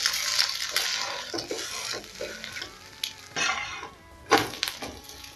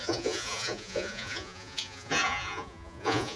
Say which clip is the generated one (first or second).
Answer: second